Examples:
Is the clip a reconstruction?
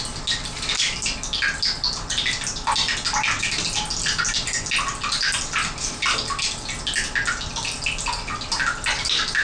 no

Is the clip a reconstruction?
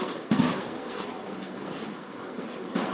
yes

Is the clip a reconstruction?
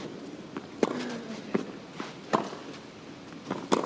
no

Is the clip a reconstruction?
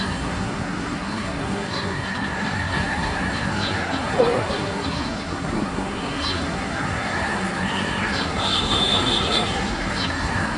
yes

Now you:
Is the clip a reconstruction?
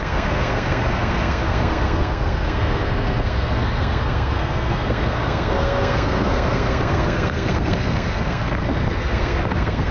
yes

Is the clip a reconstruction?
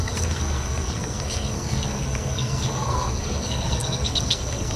yes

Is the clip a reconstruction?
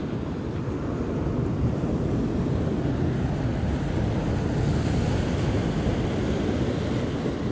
no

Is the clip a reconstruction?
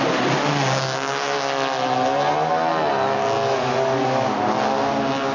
no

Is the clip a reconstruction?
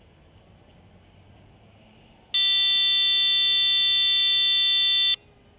no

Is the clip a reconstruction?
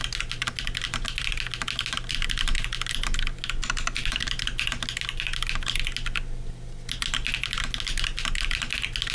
no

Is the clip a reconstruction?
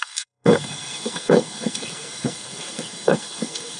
yes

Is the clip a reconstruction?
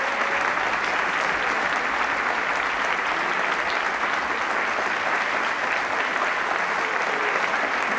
no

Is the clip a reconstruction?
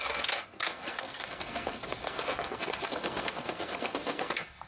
yes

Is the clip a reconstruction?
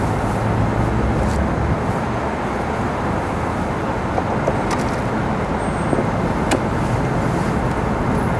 no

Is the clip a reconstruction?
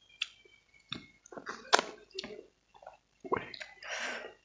no